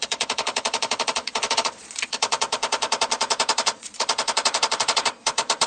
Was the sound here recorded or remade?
remade